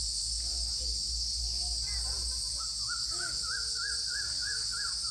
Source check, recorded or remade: recorded